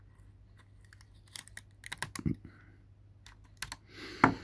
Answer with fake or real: real